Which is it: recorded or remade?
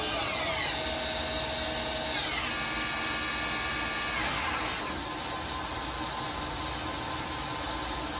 recorded